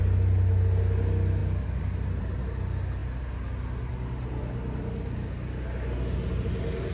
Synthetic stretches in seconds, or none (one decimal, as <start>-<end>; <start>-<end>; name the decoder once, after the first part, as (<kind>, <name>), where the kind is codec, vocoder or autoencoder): none